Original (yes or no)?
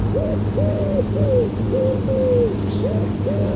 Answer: yes